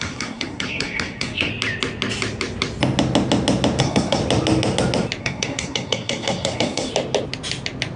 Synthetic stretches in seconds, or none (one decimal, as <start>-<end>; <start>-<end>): 0.0-1.5; 3.8-4.2; 5.2-6.9